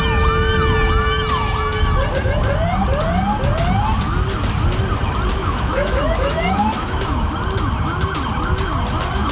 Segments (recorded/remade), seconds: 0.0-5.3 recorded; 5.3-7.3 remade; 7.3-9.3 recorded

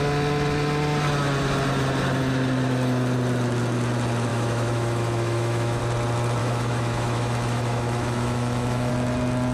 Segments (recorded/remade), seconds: 0.0-4.3 recorded; 4.3-5.8 remade; 5.8-6.4 recorded; 6.4-8.9 remade; 8.9-9.5 recorded

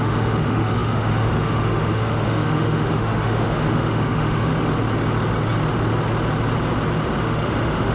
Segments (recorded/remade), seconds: 0.0-4.5 remade; 4.5-7.2 recorded; 7.2-7.9 remade

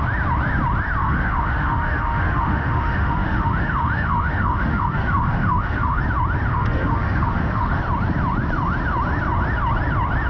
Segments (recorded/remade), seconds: 0.0-1.0 recorded; 1.0-6.0 remade; 6.0-6.5 recorded; 6.5-7.8 remade; 7.8-10.3 recorded